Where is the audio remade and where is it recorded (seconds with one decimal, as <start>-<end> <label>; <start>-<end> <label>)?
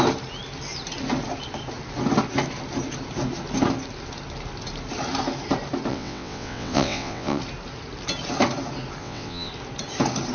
0.0-5.9 recorded; 5.9-7.4 remade; 7.4-9.0 recorded; 9.0-9.5 remade; 9.5-10.3 recorded